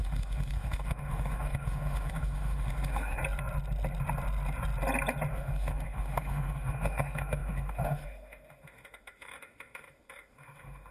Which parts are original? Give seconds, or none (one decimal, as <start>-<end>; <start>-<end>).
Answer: 3.2-5.3